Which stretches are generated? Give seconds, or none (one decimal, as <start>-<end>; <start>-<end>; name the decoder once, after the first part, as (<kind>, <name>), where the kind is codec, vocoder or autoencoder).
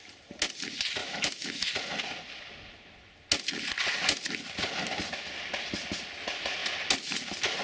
1.0-1.7 (autoencoder, DAC-VAE)